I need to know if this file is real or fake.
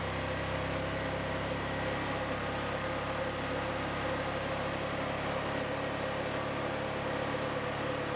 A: real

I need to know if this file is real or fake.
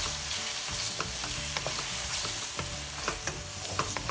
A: real